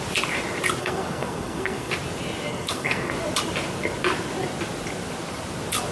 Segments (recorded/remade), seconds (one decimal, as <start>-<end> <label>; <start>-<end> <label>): 0.0-0.8 recorded; 0.8-1.9 remade; 1.9-2.5 recorded; 2.5-3.1 remade; 3.1-5.9 recorded

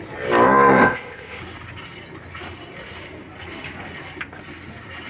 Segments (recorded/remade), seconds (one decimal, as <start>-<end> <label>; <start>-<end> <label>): 0.0-0.8 recorded; 0.8-1.4 remade; 1.4-5.1 recorded